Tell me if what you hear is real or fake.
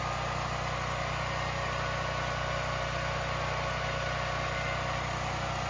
real